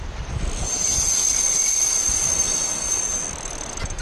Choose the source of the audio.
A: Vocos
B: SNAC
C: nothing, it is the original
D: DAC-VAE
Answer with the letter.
C